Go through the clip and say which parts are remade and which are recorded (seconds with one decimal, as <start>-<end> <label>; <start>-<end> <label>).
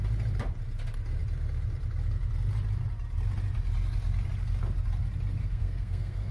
0.0-5.4 recorded; 5.4-6.3 remade